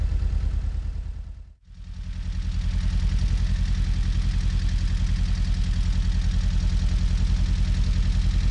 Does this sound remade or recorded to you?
recorded